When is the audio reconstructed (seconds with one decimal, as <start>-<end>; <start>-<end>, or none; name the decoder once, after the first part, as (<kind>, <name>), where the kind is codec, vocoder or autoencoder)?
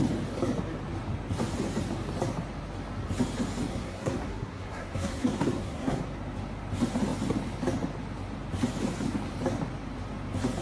3.7-6.0 (codec, SNAC)